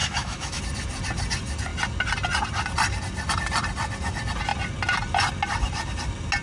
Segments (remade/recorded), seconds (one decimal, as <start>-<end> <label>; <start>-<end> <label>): 0.0-0.6 remade; 0.6-6.4 recorded